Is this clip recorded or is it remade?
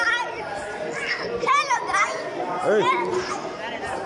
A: recorded